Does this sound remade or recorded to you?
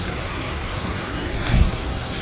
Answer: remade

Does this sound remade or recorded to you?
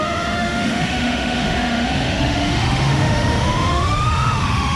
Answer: remade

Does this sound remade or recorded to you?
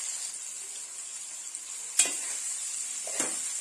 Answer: recorded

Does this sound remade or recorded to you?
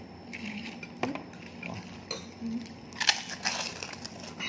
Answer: recorded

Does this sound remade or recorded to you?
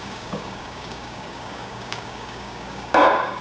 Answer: remade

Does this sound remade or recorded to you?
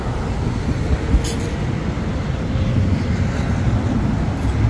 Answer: recorded